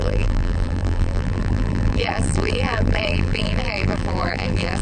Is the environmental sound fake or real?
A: fake